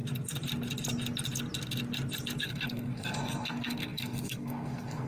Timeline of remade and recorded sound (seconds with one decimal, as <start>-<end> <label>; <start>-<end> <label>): 0.0-2.4 recorded; 2.4-5.1 remade